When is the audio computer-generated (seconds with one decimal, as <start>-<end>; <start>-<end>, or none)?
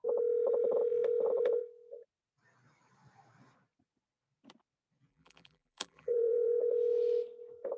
5.1-6.5